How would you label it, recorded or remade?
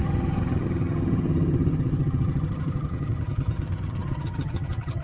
remade